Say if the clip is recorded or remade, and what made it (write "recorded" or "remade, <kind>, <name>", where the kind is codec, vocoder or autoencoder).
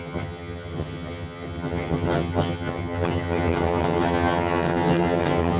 remade, vocoder, HiFi-GAN